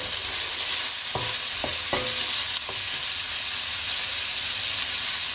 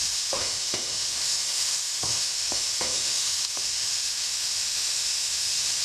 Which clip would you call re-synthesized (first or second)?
second